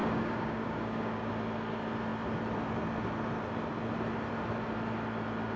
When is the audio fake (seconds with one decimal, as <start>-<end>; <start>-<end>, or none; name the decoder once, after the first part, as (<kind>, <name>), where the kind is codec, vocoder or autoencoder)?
0.0-1.3 (codec, DAC)